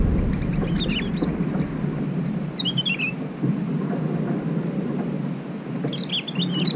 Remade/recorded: recorded